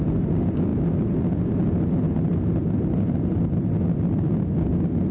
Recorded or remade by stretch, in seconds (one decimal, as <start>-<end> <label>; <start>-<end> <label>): 0.0-5.1 recorded